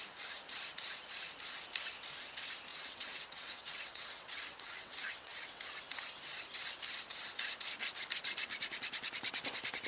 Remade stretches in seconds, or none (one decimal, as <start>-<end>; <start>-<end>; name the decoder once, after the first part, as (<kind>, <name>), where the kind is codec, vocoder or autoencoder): 2.7-5.6 (vocoder, WaveNeXt)